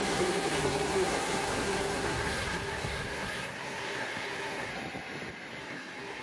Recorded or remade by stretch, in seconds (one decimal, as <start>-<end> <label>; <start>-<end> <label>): 0.0-4.7 remade; 4.7-5.6 recorded; 5.6-6.2 remade